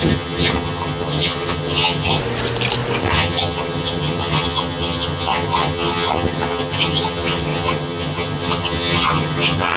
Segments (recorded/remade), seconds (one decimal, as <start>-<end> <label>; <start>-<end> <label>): 0.0-2.2 remade; 2.2-3.0 recorded; 3.0-9.8 remade